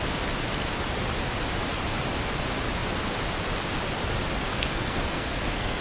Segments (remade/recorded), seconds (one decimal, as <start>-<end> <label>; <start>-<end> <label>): 0.0-4.5 recorded; 4.5-5.8 remade